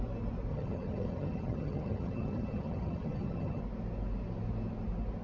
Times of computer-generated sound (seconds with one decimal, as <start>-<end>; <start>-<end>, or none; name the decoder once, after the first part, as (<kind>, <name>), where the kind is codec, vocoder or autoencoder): 0.5-3.6 (vocoder, HiFi-GAN)